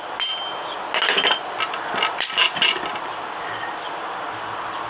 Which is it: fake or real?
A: real